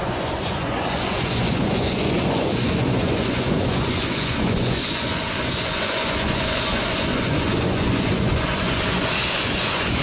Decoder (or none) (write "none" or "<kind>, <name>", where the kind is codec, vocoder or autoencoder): vocoder, Vocos